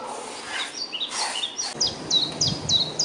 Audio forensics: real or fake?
real